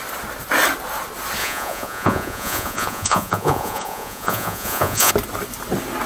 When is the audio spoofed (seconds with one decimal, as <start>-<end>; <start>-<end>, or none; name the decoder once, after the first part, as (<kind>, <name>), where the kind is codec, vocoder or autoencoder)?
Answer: 1.4-5.1 (vocoder, Vocos)